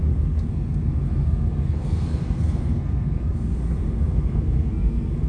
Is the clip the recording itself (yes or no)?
no